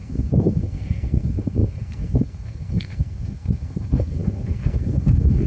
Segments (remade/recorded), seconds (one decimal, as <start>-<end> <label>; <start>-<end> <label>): 0.0-5.5 remade